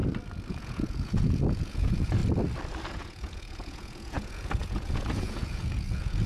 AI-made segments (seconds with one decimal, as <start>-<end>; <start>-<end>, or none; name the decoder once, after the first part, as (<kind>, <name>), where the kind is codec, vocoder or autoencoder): 0.5-2.2 (vocoder, Vocos); 2.9-6.3

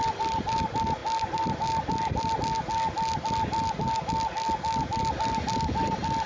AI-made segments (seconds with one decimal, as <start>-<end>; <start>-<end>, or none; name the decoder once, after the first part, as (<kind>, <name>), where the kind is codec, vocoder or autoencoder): none

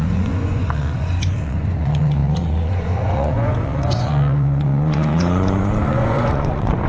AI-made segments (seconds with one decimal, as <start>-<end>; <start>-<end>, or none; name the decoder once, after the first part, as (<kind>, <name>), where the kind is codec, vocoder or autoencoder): 0.0-6.9 (vocoder, Vocos)

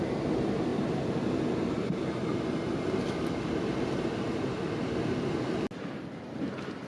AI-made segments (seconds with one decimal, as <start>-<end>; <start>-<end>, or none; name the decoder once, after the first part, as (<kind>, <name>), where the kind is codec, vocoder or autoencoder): none

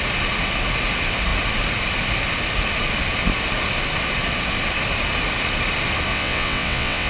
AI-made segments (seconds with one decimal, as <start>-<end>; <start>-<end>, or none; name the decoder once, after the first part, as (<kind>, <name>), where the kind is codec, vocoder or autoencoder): 6.1-7.1 (vocoder, WaveNeXt)